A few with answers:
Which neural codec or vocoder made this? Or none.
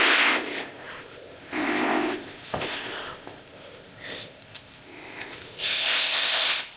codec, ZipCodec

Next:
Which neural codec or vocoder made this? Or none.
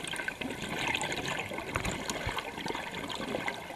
none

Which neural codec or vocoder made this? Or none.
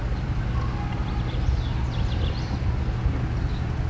none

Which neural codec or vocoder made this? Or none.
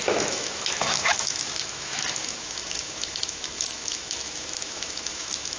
autoencoder, DAC-VAE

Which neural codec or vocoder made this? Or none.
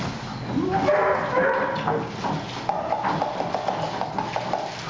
none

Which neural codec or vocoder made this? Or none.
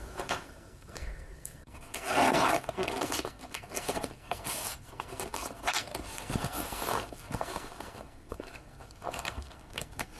codec, SNAC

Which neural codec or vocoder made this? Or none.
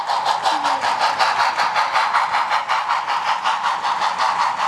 none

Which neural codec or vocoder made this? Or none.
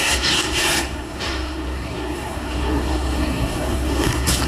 codec, SNAC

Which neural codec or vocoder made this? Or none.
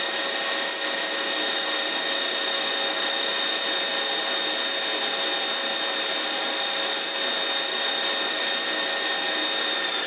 none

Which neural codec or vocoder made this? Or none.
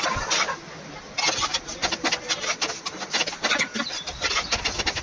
none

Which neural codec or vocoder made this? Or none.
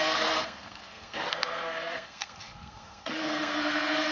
codec, SNAC